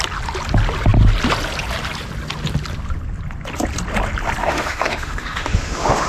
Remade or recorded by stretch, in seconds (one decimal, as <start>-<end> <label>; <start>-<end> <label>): 0.0-4.4 recorded; 4.4-6.1 remade

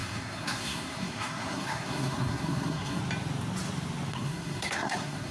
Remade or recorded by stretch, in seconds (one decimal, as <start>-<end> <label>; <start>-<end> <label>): 0.0-3.0 remade; 3.0-4.1 recorded; 4.1-5.3 remade

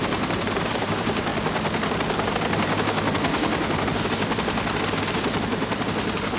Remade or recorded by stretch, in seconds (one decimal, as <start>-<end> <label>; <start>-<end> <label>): 0.0-1.3 remade; 1.3-5.1 recorded; 5.1-6.4 remade

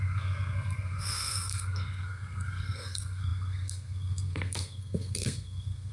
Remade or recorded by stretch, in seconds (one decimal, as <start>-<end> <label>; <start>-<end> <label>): 0.0-5.9 remade

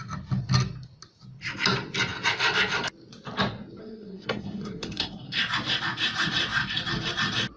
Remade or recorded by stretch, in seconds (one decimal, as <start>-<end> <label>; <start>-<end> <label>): 0.0-3.8 recorded; 3.8-5.4 remade; 5.4-7.6 recorded

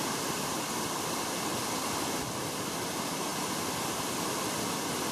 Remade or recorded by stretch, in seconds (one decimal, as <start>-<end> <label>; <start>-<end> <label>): 0.0-5.1 recorded

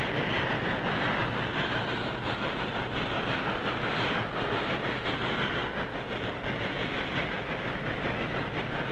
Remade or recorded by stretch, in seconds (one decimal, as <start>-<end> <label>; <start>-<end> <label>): 0.0-8.9 recorded